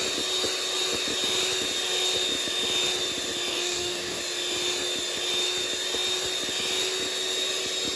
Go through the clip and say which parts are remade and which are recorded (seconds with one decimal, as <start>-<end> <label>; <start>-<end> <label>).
0.0-3.5 recorded; 3.5-4.2 remade; 4.2-8.0 recorded